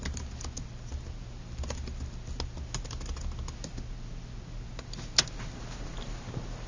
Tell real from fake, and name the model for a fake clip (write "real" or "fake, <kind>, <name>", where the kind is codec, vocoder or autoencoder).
real